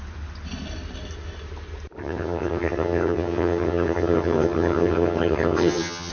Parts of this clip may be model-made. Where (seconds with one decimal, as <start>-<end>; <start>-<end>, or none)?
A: 2.0-6.1